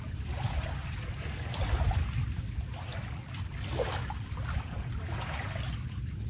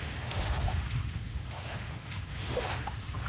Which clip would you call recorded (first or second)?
first